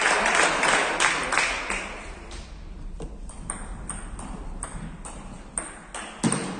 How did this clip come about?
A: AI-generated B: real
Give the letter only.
B